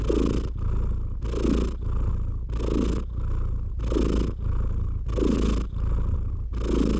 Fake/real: real